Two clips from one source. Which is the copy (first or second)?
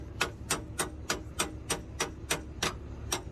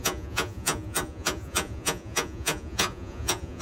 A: second